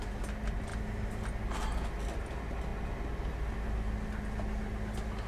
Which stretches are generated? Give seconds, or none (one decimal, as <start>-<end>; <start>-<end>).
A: none